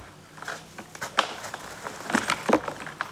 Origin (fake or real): real